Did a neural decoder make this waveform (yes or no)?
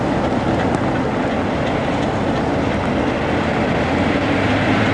no